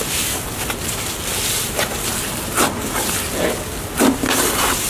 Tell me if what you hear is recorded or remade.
recorded